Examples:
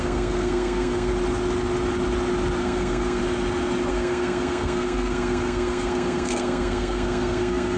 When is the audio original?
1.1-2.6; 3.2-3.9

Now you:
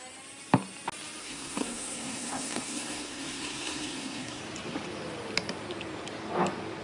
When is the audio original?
0.0-1.2; 4.4-6.8

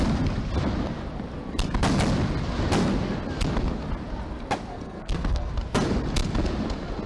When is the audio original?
0.0-4.7; 5.5-7.1

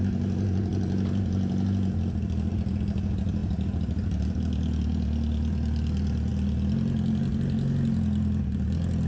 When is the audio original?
0.0-9.1

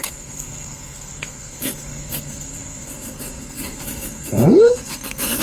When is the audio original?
none

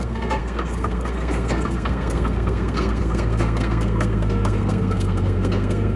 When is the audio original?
none

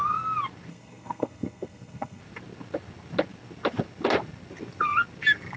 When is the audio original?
0.0-0.7; 2.2-5.6